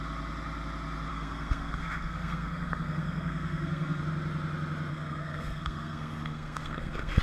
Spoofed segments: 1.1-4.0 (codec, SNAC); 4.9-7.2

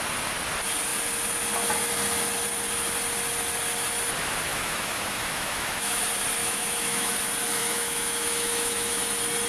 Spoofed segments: 4.5-6.0 (autoencoder, DAC-VAE); 6.4-7.1; 7.6-9.0